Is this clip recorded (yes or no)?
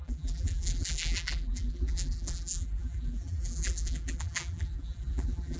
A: no